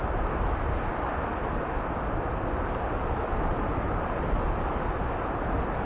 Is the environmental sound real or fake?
real